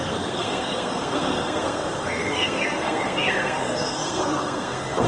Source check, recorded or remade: remade